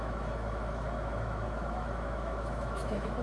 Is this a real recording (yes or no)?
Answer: no